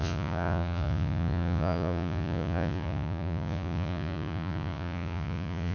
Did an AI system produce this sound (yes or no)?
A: yes